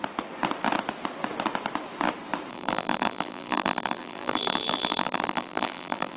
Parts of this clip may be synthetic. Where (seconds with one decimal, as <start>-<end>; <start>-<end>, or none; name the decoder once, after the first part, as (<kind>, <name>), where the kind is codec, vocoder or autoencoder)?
2.5-6.2 (vocoder, BigVGAN v2)